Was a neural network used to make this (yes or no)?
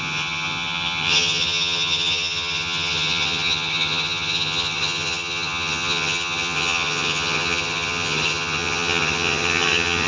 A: yes